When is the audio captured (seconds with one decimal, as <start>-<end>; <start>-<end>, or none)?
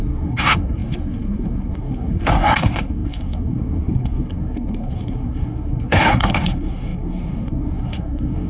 none